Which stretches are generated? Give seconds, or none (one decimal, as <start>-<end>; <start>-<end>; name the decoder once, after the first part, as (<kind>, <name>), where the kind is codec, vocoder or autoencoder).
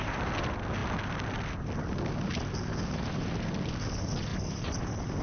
4.3-4.8 (vocoder, BigVGAN v2)